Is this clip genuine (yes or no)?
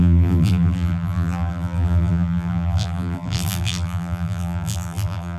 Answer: no